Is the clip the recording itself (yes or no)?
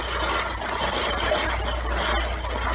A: yes